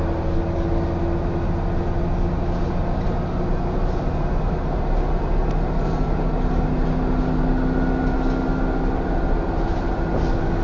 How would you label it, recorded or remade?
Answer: recorded